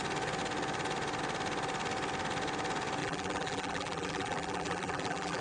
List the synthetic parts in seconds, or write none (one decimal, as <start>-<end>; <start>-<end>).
3.0-5.4